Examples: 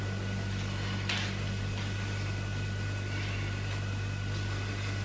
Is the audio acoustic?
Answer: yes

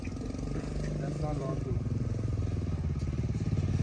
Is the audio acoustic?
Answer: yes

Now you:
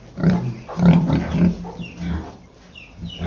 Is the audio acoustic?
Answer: yes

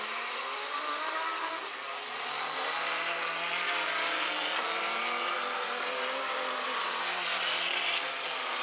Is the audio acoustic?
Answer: no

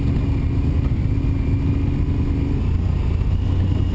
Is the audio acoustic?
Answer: yes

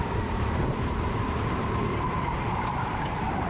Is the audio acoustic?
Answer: no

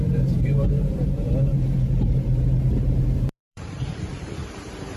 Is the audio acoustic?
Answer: no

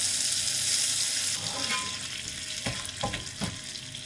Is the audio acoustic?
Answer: yes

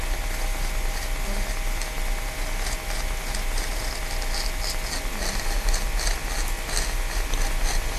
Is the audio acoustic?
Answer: yes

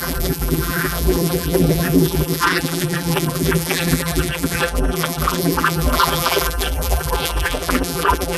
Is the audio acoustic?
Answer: no